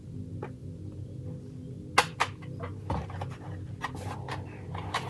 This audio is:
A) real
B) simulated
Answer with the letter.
A